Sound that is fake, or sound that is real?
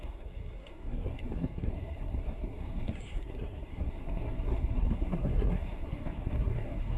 fake